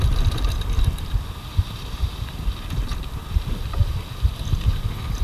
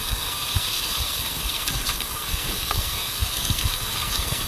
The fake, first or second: second